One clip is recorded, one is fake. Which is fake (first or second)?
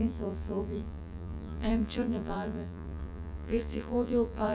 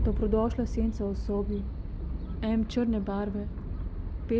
first